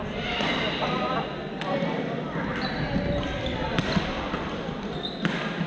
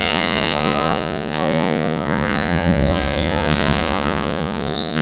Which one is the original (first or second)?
first